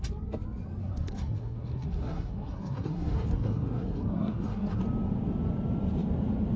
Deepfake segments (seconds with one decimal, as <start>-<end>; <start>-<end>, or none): 0.8-4.8